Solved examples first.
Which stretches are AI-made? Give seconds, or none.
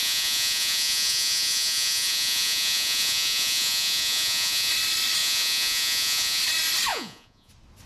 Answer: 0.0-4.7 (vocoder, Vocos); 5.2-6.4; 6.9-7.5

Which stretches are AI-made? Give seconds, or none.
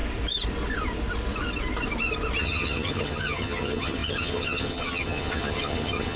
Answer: 2.4-6.2 (vocoder, HiFi-GAN)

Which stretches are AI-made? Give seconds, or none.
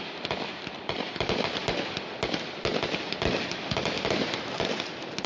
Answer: none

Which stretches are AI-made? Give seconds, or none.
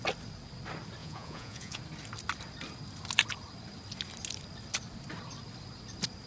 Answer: 1.0-1.8 (vocoder, Vocos)